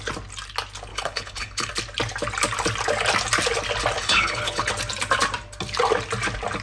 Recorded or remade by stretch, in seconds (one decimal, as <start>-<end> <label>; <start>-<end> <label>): 0.0-0.9 recorded; 0.9-1.7 remade; 1.7-4.0 recorded; 4.0-4.7 remade; 4.7-6.6 recorded